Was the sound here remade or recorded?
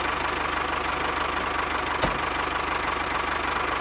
recorded